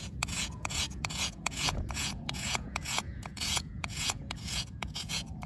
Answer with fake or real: fake